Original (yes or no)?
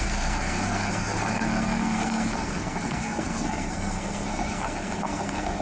no